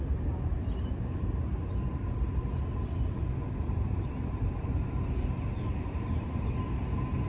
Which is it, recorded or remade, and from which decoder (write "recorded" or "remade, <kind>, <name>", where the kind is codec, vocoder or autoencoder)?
recorded